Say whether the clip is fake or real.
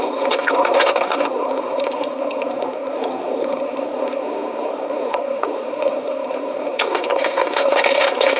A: fake